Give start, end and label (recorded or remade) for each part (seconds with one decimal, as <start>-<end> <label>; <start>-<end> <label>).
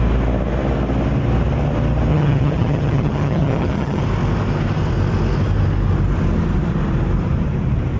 0.0-2.1 recorded; 2.1-4.0 remade; 4.0-8.0 recorded